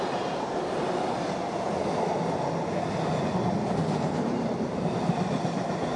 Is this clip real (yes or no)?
yes